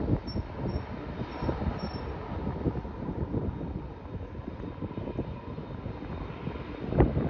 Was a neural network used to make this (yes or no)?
no